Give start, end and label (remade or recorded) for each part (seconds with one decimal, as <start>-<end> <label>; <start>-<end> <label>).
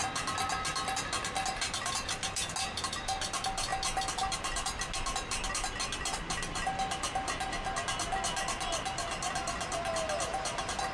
0.0-10.9 recorded